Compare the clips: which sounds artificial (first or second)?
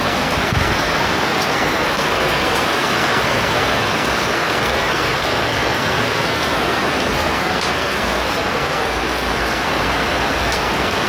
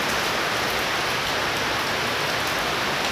first